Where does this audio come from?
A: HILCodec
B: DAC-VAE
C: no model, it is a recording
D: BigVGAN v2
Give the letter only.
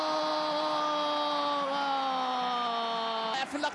C